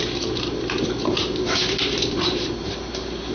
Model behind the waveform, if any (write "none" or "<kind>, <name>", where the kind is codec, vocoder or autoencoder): vocoder, BigVGAN v2